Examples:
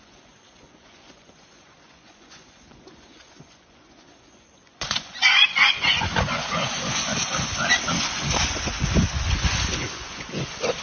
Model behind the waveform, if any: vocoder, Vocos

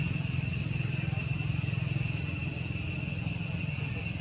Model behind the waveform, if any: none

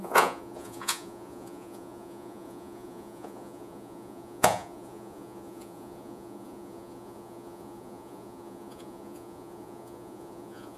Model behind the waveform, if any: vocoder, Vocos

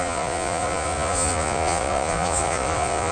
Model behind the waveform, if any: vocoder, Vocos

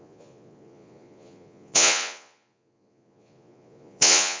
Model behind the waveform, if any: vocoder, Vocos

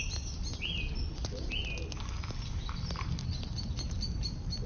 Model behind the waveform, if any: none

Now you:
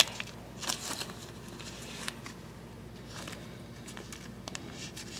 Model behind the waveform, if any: none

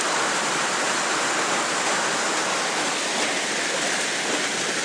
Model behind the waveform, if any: none